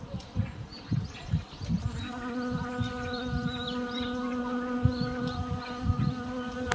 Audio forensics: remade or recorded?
recorded